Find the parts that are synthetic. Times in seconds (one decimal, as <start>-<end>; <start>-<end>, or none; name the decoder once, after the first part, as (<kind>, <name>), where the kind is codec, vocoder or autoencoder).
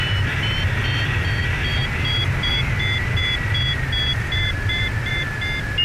1.7-2.5 (vocoder, BigVGAN v2); 4.1-5.1